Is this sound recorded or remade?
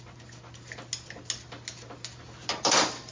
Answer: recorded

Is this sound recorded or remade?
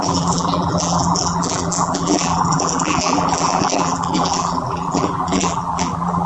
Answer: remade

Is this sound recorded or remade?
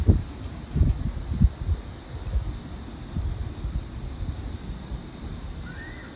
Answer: recorded